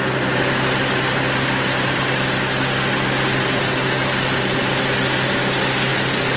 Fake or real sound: real